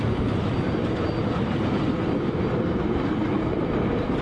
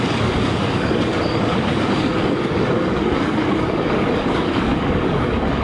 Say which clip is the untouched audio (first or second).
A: first